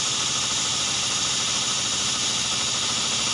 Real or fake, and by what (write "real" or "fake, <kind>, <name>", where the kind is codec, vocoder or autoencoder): real